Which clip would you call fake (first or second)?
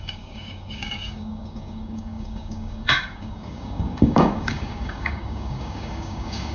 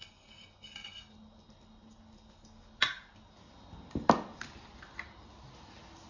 first